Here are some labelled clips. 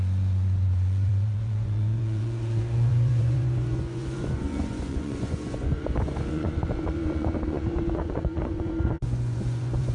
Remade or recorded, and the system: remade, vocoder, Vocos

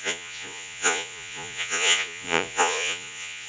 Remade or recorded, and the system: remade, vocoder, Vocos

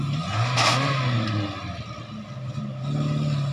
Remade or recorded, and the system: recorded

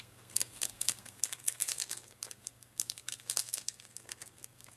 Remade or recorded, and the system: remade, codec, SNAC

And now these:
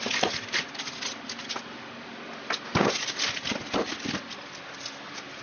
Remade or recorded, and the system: recorded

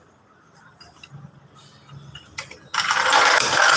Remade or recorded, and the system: recorded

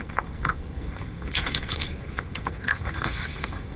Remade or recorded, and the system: remade, codec, SNAC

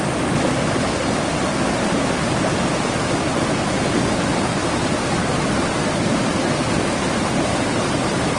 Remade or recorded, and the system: recorded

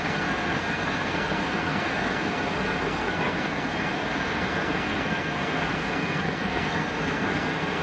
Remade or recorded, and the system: remade, codec, SNAC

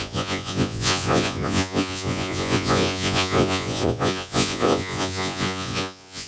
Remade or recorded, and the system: remade, vocoder, Vocos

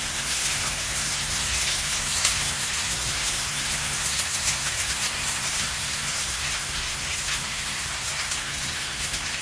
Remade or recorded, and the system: remade, codec, SNAC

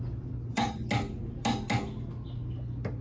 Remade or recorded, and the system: recorded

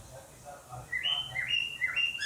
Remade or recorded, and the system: recorded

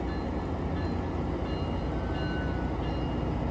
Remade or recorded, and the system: recorded